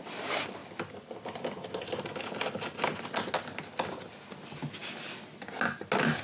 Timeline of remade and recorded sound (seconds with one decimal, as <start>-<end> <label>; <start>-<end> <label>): 0.0-6.2 recorded